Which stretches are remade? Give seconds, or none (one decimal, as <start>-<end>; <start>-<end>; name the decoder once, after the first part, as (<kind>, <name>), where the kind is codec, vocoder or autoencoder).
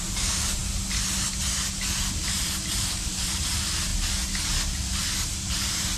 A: 0.0-0.6 (vocoder, BigVGAN v2); 2.2-3.9; 5.5-6.0